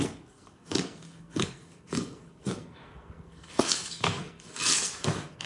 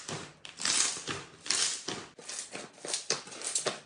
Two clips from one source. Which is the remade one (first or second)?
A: first